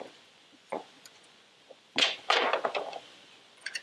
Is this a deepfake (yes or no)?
yes